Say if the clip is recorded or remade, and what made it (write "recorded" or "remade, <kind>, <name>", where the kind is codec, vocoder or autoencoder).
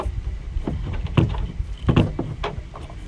recorded